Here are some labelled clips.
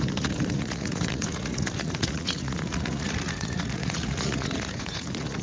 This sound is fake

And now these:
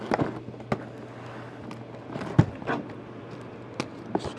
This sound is real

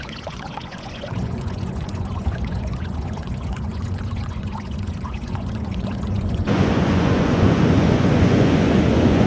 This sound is fake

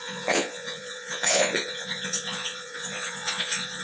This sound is fake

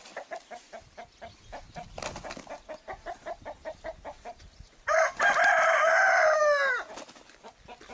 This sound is real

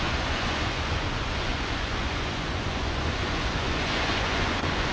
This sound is fake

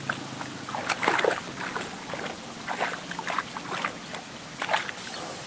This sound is real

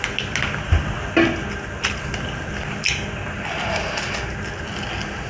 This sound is real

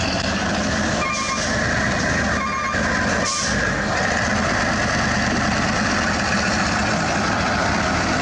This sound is real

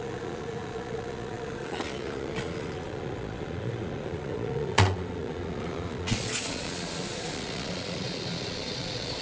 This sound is fake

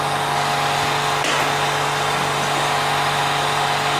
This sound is real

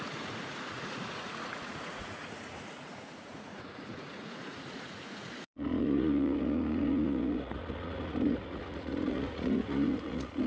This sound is fake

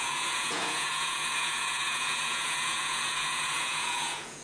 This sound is fake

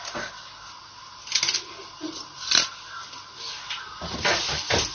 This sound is real